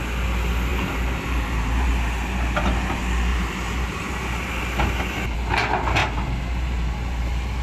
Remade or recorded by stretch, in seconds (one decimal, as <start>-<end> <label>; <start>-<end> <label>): 0.0-0.7 recorded; 0.7-1.9 remade; 1.9-3.3 recorded; 3.3-4.0 remade; 4.0-6.0 recorded; 6.0-7.6 remade